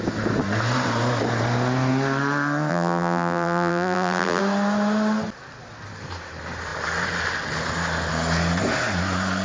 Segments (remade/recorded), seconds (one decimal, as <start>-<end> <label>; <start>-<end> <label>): 0.0-2.7 recorded; 2.7-4.4 remade; 4.4-9.4 recorded